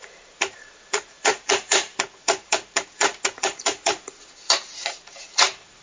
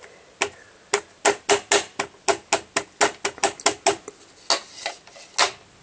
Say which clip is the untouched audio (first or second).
second